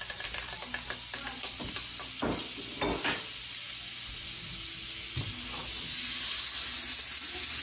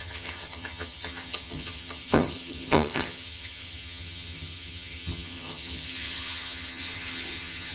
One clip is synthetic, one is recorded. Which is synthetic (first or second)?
second